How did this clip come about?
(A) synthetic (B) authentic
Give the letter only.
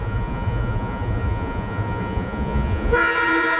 A